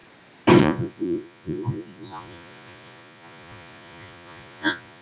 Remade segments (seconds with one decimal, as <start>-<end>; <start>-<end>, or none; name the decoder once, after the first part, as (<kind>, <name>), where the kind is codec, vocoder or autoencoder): 0.6-5.0 (vocoder, Vocos)

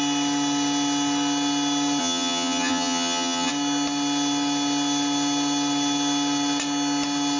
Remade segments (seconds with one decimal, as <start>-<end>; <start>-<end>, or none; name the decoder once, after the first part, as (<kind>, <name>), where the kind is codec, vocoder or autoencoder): 2.0-3.5 (vocoder, HiFi-GAN)

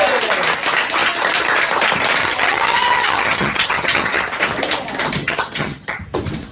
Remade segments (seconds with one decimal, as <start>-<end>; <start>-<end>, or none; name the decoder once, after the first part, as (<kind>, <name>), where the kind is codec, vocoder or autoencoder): 2.2-4.2 (vocoder, HiFi-GAN); 5.2-6.0

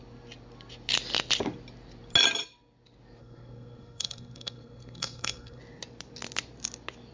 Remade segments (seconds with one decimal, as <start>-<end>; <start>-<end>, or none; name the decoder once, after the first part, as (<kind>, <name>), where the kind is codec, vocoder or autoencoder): 3.2-5.6 (codec, SNAC)

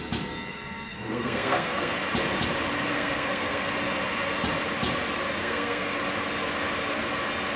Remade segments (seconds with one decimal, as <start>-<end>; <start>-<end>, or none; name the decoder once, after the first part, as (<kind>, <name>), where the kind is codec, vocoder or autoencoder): 0.5-1.9 (codec, SNAC); 2.9-3.7; 5.4-6.0

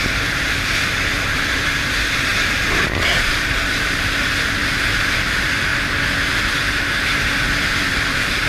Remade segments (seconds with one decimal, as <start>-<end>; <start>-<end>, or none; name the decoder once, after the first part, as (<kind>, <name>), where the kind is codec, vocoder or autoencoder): 0.0-5.7 (vocoder, BigVGAN v2); 6.4-8.5